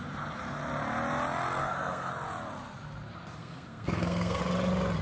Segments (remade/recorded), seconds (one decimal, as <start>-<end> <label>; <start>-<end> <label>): 0.0-1.6 recorded; 1.6-2.1 remade; 2.1-3.4 recorded; 3.4-4.4 remade; 4.4-5.0 recorded